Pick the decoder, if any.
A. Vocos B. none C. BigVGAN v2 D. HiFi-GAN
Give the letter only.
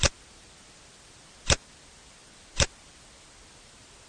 B